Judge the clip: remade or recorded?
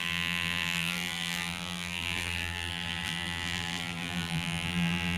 remade